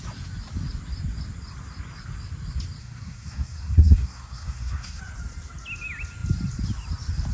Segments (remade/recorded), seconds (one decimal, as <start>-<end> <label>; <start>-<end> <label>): 0.0-2.8 recorded; 2.8-5.0 remade; 5.0-7.3 recorded